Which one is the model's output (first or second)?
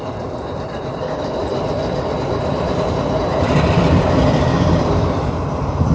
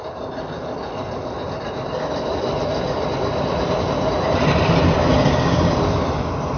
first